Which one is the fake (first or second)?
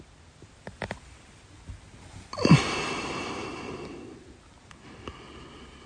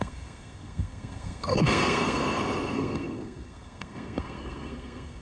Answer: second